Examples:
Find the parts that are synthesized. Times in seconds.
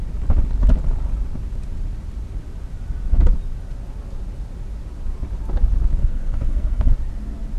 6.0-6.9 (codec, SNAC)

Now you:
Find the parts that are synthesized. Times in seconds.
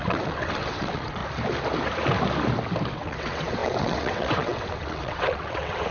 0.0-1.2 (vocoder, WaveNeXt); 2.9-5.9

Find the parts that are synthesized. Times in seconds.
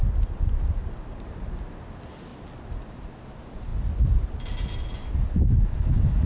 none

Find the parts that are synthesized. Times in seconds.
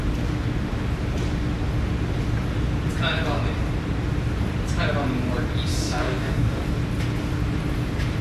5.7-6.6 (codec, DAC)